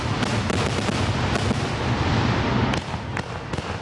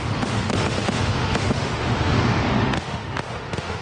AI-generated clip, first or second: second